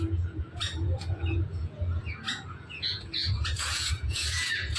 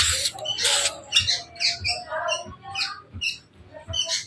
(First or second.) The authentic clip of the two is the second